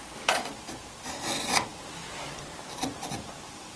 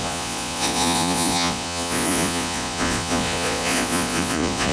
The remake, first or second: second